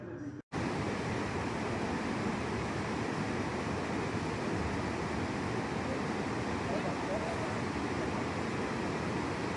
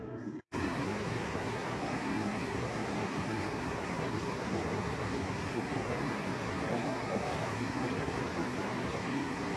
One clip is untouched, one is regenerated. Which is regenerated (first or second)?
second